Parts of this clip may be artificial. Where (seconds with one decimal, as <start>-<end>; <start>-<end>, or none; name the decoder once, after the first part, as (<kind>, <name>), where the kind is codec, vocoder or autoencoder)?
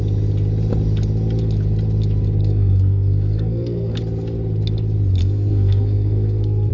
2.4-4.0 (codec, SNAC); 5.2-6.7